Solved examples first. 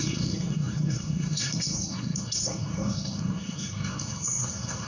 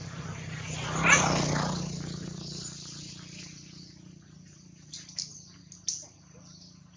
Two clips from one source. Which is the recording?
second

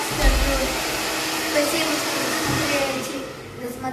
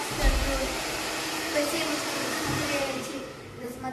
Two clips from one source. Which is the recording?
first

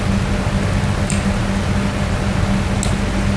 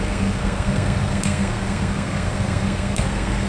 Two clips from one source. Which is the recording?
first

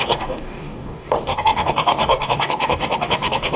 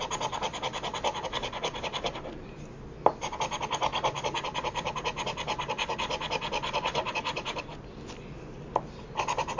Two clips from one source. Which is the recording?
second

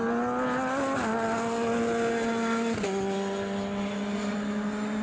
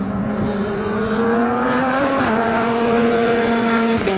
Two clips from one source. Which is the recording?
first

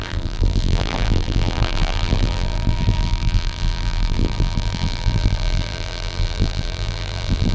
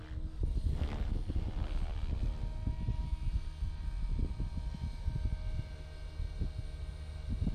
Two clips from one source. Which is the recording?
second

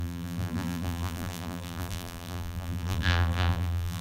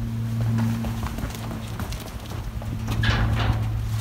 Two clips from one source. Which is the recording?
second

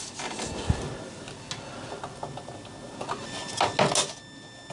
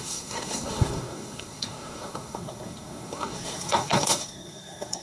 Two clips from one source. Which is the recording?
first